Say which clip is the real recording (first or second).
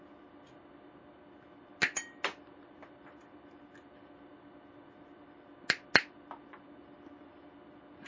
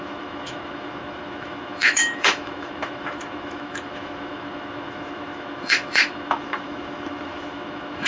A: first